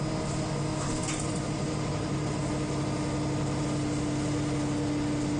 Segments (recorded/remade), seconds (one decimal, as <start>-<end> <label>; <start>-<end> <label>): 0.0-1.0 recorded; 1.0-2.5 remade; 2.5-5.4 recorded